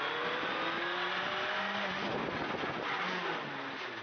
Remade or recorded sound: recorded